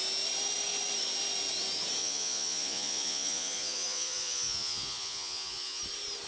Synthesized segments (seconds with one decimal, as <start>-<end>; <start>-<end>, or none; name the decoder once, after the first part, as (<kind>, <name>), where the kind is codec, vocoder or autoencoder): 2.0-5.8 (vocoder, Vocos)